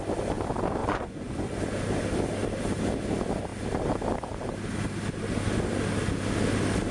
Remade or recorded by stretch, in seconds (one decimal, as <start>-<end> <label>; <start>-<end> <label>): 0.0-0.8 recorded; 0.8-1.6 remade; 1.6-6.9 recorded